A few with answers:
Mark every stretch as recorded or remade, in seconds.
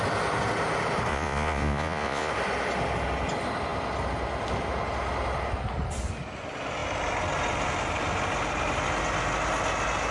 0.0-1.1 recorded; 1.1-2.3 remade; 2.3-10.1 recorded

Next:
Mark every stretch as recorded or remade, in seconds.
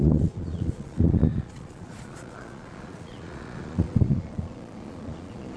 0.0-5.6 remade